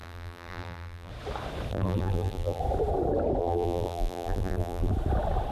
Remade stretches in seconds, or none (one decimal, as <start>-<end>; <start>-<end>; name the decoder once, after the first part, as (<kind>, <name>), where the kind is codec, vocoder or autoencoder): 0.0-1.1 (vocoder, BigVGAN v2); 1.7-2.6; 3.4-4.9